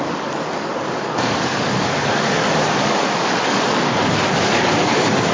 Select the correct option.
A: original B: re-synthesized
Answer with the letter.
B